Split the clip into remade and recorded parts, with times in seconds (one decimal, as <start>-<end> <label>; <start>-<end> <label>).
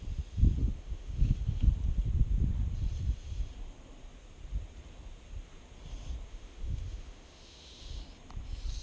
0.0-0.6 recorded; 0.6-1.7 remade; 1.7-6.3 recorded; 6.3-8.0 remade; 8.0-8.8 recorded